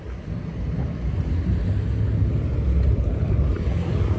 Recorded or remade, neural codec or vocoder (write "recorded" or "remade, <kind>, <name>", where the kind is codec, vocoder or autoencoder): recorded